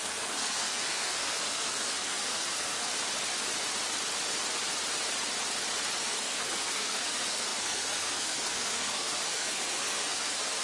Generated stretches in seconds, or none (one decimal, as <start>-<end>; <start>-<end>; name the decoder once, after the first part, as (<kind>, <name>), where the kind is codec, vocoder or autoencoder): 0.0-2.9 (codec, SNAC); 6.0-10.6